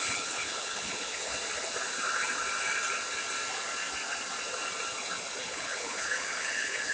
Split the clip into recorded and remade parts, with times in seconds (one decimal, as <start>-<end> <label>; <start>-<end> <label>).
0.0-1.3 remade; 1.3-5.4 recorded; 5.4-6.9 remade